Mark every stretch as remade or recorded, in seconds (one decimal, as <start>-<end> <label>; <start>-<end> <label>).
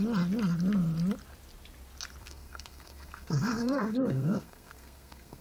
0.0-2.2 recorded; 2.2-5.4 remade